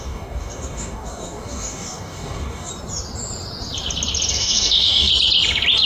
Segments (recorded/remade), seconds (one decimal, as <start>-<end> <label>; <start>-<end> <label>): 0.0-2.7 remade; 2.7-4.3 recorded; 4.3-5.1 remade; 5.1-5.9 recorded